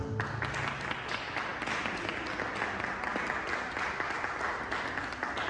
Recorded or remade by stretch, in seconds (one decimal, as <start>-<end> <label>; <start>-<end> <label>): 0.0-5.5 recorded